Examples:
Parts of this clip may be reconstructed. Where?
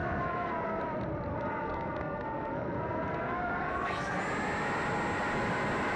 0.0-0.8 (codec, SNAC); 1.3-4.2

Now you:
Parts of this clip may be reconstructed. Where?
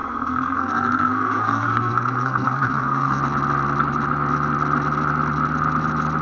0.0-3.2 (codec, SNAC)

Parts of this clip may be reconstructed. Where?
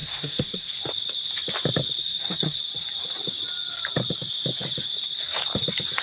0.0-0.7 (codec, SNAC); 2.0-2.6